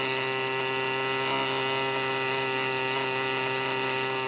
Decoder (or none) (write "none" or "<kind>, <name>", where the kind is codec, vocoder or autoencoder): none